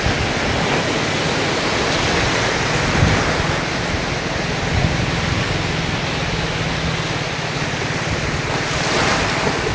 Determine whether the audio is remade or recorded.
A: recorded